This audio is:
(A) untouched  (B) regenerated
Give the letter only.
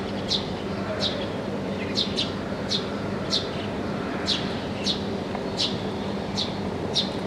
A